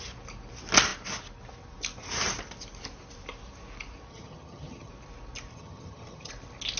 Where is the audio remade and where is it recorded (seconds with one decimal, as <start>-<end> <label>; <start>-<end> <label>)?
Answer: 0.0-4.1 recorded; 4.1-4.9 remade; 4.9-5.5 recorded; 5.5-6.3 remade; 6.3-6.8 recorded